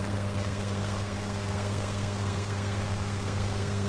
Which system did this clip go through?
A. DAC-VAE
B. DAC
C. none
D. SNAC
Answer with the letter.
D